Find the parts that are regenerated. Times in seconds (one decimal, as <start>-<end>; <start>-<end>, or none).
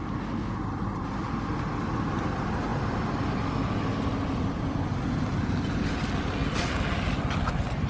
none